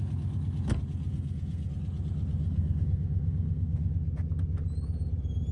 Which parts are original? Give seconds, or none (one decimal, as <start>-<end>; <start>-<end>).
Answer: 0.0-1.1; 1.7-2.4; 3.9-5.5